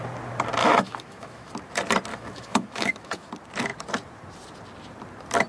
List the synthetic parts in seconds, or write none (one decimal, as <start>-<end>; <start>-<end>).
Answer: 0.6-1.5; 2.1-3.3